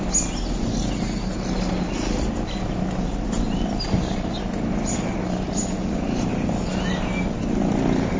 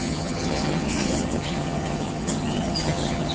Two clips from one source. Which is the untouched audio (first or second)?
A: first